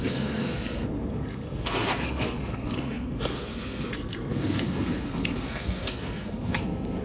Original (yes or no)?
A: no